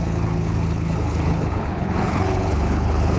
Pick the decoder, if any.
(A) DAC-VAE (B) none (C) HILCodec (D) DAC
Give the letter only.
C